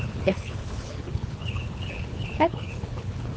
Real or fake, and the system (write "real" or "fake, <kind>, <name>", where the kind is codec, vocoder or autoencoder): fake, codec, HILCodec